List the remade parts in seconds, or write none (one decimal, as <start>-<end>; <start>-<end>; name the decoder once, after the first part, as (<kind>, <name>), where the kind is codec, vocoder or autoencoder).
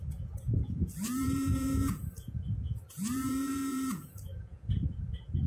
0.0-5.5 (vocoder, Vocos)